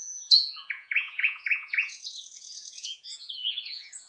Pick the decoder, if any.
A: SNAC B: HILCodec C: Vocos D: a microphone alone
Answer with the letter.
C